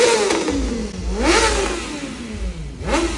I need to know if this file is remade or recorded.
recorded